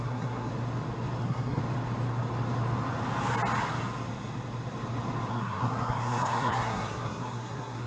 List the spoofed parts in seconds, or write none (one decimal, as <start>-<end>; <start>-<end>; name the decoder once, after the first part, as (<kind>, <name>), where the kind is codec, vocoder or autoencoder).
0.0-0.5 (codec, SNAC); 1.2-1.6; 5.3-7.9